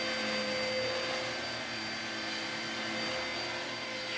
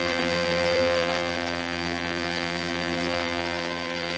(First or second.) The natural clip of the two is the first